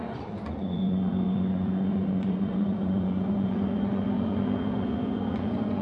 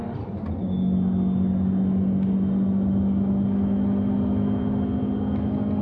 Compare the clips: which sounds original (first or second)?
second